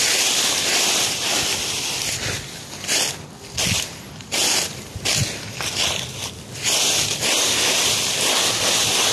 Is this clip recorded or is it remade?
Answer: recorded